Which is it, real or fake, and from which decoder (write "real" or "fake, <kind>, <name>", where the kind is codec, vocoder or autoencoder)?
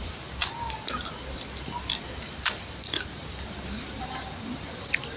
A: fake, vocoder, BigVGAN v2